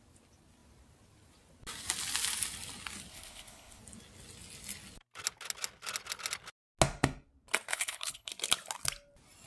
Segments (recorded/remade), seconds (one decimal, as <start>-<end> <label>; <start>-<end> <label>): 0.0-3.1 recorded; 3.1-3.8 remade; 3.8-7.7 recorded; 7.7-8.3 remade; 8.3-9.5 recorded